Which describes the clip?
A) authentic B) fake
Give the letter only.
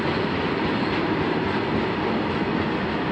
A